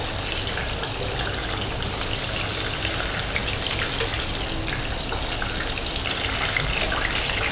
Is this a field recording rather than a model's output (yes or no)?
yes